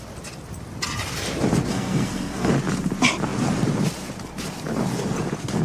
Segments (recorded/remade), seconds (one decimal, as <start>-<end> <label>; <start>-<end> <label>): 0.0-1.7 recorded; 1.7-2.5 remade; 2.5-5.6 recorded